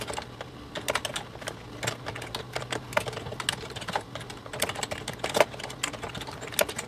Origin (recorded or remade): recorded